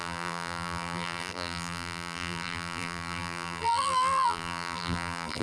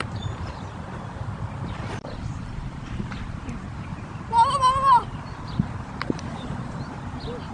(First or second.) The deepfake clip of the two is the first